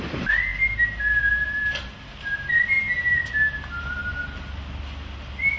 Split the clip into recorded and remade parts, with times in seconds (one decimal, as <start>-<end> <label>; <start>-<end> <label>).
0.0-5.6 recorded